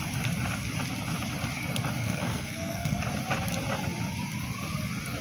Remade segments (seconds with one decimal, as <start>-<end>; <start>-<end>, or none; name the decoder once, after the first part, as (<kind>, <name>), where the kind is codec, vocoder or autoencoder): 2.0-3.0 (codec, SNAC)